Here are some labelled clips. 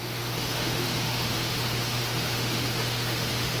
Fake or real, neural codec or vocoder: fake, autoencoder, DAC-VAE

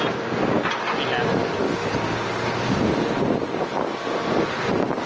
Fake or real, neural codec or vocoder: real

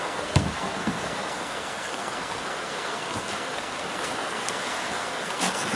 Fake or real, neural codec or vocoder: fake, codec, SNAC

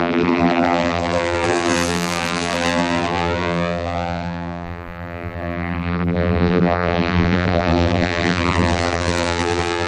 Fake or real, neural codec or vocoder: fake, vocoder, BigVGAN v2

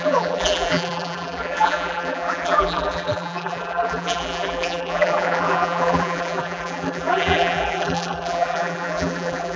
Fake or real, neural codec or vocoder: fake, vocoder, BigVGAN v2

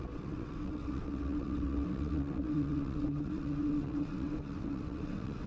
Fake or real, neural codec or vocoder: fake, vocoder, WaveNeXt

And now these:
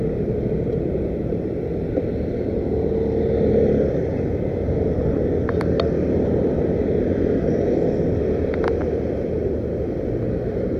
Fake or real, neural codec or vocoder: real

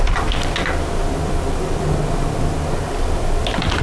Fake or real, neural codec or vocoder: real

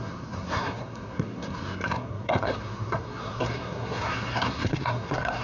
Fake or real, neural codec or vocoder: fake, codec, SNAC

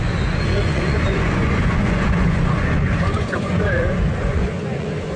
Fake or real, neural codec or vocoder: fake, vocoder, Vocos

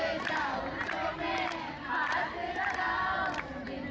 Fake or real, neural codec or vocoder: real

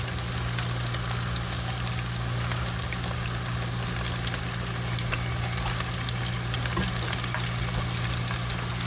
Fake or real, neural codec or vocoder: real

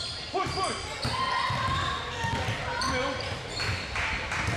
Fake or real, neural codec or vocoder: real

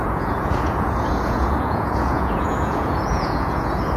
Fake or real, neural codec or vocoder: fake, vocoder, Vocos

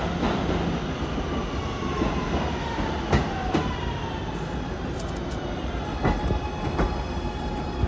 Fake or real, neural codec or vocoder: real